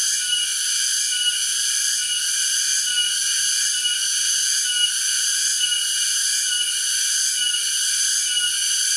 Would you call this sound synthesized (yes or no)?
no